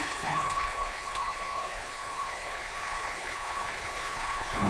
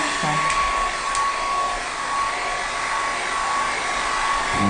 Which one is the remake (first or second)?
first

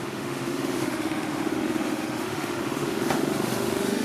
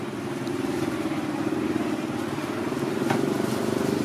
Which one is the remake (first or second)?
first